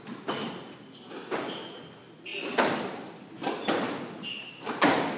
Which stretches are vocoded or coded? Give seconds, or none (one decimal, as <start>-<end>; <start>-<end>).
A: none